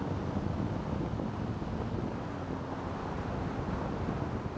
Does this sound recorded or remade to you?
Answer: recorded